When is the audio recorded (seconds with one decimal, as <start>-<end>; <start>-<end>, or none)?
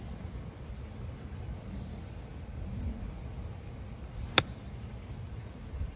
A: 0.0-6.0